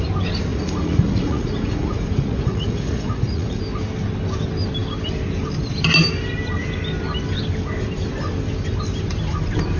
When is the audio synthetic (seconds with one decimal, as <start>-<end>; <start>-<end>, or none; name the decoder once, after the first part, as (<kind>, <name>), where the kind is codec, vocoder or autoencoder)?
0.5-3.6 (vocoder, Vocos)